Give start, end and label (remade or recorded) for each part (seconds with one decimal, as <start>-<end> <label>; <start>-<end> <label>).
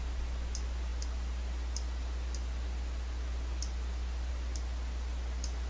0.0-5.7 recorded